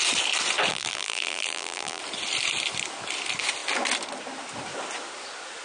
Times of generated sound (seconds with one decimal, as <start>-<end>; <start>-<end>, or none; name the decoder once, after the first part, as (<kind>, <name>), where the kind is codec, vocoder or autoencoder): 0.7-2.0 (vocoder, BigVGAN v2)